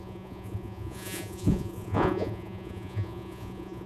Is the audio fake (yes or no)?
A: yes